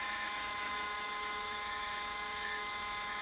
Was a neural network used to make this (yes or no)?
yes